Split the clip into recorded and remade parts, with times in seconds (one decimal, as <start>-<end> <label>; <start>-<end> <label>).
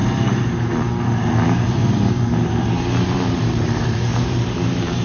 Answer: 0.0-3.0 recorded; 3.0-5.0 remade